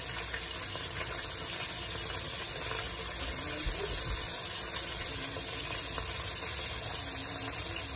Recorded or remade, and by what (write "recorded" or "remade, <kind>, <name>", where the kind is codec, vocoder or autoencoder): recorded